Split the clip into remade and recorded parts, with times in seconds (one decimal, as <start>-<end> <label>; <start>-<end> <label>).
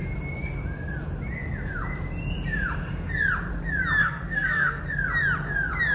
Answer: 0.0-4.0 recorded; 4.0-4.8 remade; 4.8-5.9 recorded